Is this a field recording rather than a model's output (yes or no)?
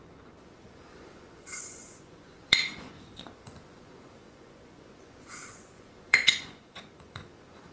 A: no